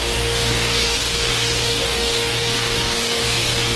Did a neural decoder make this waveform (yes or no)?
yes